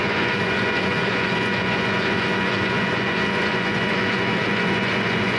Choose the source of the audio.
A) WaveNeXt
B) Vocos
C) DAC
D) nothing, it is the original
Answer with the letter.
B